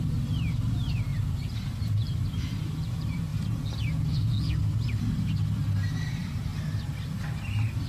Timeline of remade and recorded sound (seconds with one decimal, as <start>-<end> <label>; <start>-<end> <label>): 0.0-3.3 remade; 3.3-5.5 recorded; 5.5-6.5 remade; 6.5-7.4 recorded; 7.4-7.9 remade